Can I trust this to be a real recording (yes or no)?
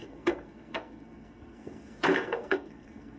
no